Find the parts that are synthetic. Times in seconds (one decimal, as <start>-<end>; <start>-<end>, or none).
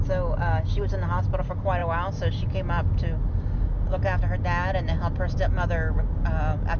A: none